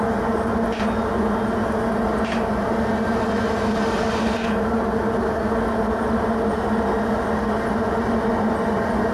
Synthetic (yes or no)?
no